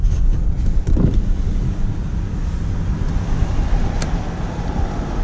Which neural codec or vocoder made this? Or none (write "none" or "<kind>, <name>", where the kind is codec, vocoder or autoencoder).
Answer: none